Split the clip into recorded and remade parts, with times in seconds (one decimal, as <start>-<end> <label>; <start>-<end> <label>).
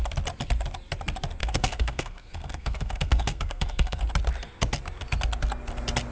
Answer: 0.0-1.4 recorded; 1.4-4.0 remade; 4.0-6.1 recorded